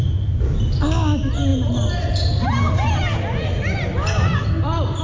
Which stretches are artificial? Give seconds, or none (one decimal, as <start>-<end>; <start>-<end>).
none